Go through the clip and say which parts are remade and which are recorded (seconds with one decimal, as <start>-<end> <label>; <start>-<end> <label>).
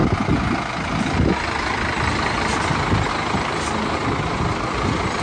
0.0-5.2 recorded